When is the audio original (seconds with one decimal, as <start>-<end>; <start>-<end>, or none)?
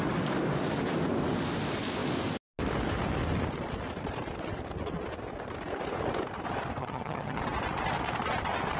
0.0-6.8; 7.4-8.8